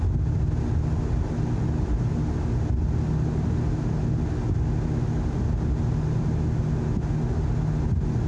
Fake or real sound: real